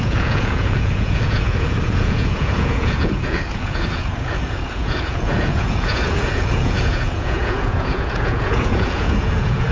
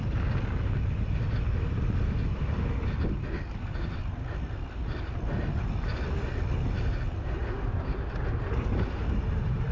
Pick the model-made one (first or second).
first